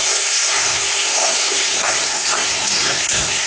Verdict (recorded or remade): remade